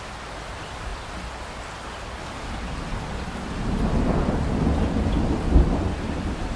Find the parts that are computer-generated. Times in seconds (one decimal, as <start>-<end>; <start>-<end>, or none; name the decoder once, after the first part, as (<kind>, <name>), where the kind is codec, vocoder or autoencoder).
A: none